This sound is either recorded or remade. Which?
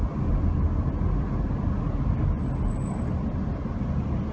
recorded